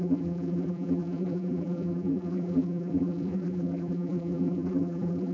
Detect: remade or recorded remade